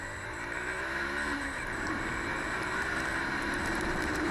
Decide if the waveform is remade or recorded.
remade